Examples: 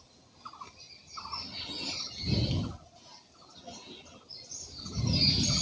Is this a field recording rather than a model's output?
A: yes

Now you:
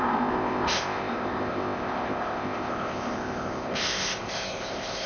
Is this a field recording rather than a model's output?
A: no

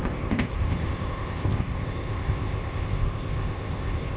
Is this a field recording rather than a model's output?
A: no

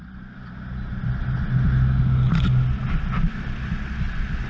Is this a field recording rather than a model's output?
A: yes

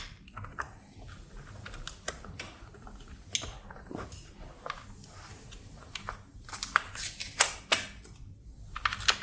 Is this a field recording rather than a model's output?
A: yes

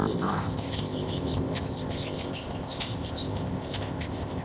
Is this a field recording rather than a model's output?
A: no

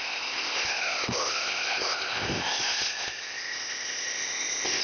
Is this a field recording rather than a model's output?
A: no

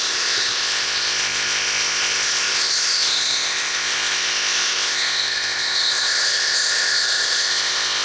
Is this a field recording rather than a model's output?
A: no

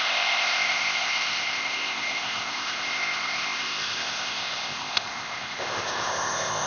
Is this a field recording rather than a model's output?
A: no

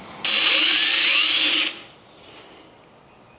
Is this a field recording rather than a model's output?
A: yes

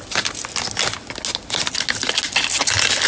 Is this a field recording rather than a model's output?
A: yes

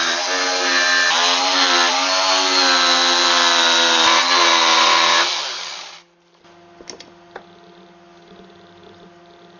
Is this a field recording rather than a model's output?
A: yes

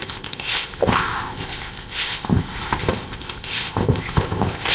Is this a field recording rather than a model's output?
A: no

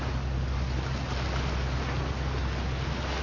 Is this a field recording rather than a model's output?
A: yes